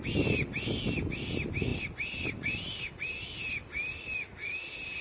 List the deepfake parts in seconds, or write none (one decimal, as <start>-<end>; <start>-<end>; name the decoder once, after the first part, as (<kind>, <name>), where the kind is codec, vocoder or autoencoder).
1.7-3.4 (vocoder, BigVGAN v2); 3.8-4.5